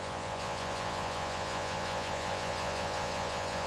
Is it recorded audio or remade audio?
remade